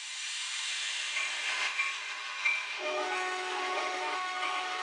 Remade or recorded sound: remade